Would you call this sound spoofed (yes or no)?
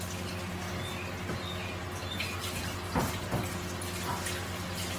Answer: no